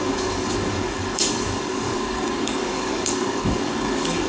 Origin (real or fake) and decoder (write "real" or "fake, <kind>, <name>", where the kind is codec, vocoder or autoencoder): fake, codec, DAC